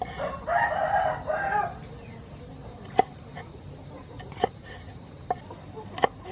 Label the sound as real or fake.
real